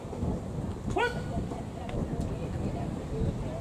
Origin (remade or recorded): recorded